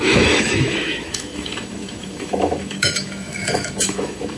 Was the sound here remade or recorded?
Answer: remade